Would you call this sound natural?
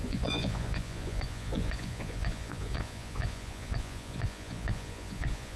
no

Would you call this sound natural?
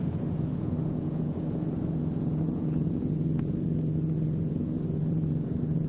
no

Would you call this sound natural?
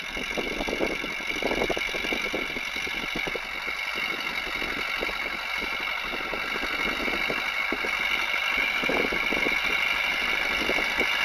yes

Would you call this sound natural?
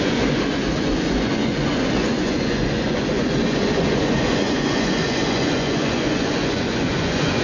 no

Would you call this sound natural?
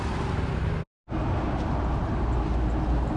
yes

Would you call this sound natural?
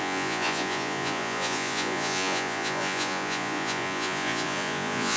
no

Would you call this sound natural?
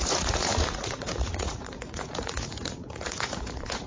no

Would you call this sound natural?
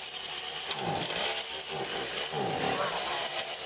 yes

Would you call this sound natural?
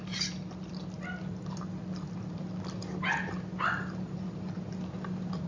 yes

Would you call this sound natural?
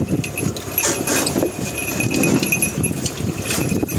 yes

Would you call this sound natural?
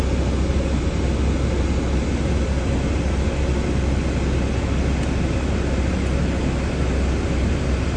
yes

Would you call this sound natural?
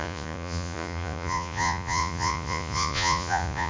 no